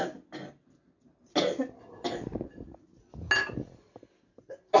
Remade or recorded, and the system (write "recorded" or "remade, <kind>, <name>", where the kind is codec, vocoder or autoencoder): recorded